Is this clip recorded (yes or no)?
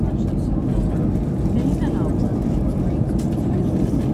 yes